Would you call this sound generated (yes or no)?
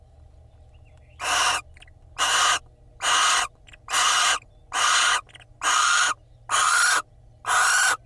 no